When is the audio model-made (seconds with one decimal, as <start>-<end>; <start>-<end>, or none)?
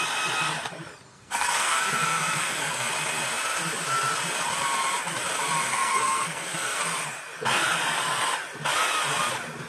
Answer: 1.1-2.9; 5.7-6.8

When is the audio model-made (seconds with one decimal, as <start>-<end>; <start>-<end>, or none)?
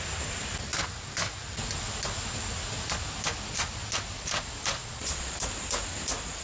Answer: 4.8-5.5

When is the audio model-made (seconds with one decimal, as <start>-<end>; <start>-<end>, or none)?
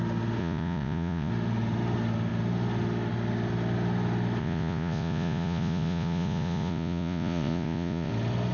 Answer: 0.4-1.3; 4.4-8.1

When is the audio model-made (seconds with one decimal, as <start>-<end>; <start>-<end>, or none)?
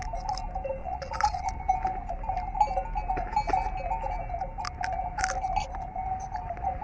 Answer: 0.8-1.5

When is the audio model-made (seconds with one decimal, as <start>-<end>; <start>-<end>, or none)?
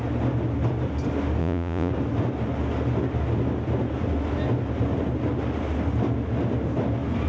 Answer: 1.4-1.9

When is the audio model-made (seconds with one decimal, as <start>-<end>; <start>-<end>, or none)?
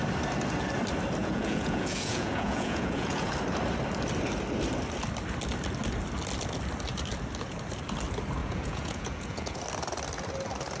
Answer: 1.2-3.3; 8.4-9.6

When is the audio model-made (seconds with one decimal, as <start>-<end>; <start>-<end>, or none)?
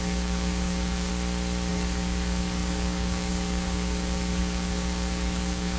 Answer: 0.0-1.1; 1.7-5.8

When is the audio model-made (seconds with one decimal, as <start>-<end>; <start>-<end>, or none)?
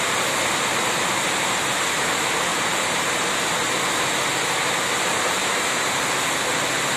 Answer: 2.5-3.3; 5.4-6.1